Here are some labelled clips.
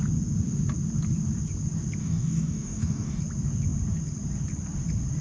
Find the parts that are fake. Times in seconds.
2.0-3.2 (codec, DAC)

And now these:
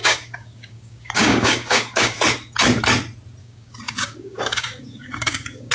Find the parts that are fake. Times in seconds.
0.0-2.2 (codec, DAC); 3.4-5.7

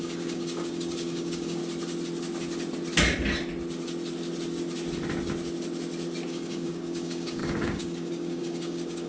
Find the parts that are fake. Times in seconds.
0.0-1.6 (codec, DAC); 6.3-9.1

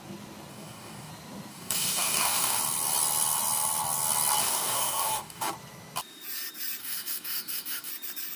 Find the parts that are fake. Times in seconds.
0.5-1.1 (codec, DAC); 1.5-2.6; 4.4-5.5; 6.8-7.9

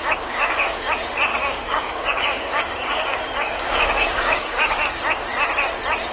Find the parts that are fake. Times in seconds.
0.0-0.9 (codec, DAC); 1.3-5.0